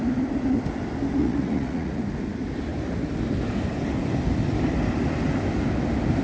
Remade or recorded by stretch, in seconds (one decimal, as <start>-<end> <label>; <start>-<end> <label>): 0.0-1.2 recorded; 1.2-2.0 remade; 2.0-6.2 recorded